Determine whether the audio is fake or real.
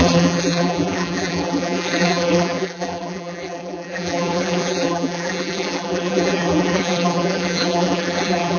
fake